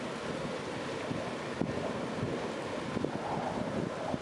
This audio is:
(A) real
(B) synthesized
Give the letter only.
A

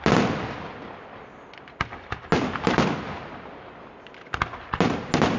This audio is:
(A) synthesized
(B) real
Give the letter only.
B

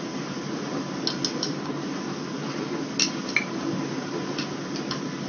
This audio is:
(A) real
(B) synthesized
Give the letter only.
A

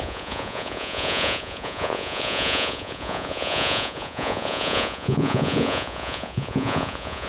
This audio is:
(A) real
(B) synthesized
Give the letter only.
B